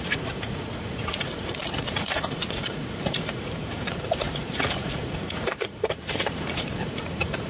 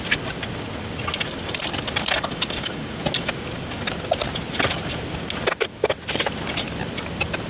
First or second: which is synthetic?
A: first